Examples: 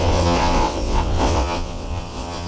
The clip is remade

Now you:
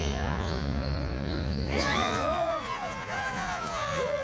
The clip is remade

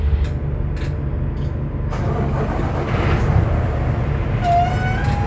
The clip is recorded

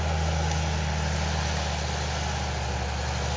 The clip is recorded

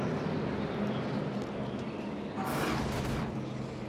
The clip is recorded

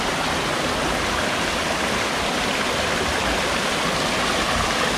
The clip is recorded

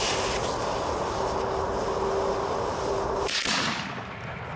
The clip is recorded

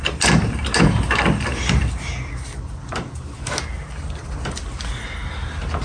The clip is recorded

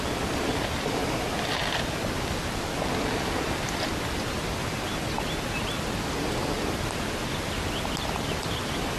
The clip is recorded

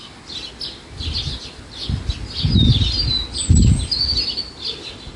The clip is recorded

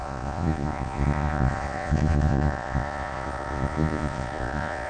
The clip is remade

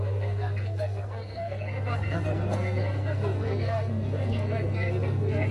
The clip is remade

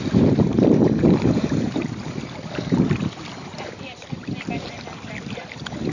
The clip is remade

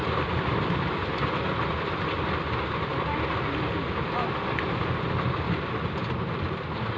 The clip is recorded